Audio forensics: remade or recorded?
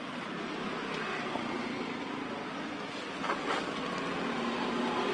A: recorded